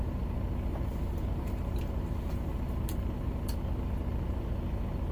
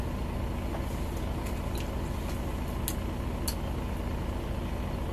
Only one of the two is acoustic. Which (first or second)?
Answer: second